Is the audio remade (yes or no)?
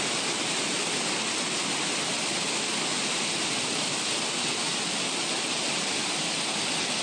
no